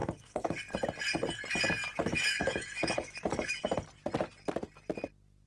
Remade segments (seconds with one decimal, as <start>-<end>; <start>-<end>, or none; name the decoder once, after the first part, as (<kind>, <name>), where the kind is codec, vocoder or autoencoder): 0.0-0.6 (autoencoder, DAC-VAE); 1.8-3.6